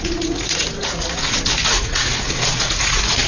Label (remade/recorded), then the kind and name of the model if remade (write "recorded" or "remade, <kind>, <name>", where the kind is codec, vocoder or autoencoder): remade, vocoder, Vocos